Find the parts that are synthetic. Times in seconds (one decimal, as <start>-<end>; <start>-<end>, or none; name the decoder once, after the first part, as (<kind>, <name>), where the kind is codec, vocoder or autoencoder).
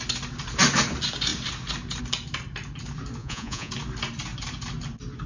3.2-3.7 (vocoder, Vocos)